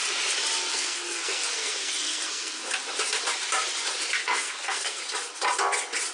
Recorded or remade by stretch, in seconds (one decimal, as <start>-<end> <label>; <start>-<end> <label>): 0.0-0.7 recorded; 0.7-2.6 remade; 2.6-4.2 recorded; 4.2-5.0 remade; 5.0-6.1 recorded